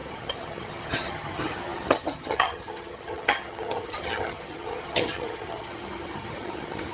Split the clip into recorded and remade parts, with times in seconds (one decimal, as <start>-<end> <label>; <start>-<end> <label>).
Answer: 0.0-6.9 remade